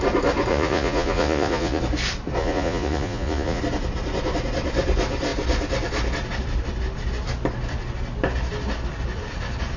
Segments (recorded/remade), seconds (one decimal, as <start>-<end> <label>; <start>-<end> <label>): 0.0-0.5 recorded; 0.5-1.8 remade; 1.8-2.4 recorded; 2.4-3.6 remade; 3.6-9.8 recorded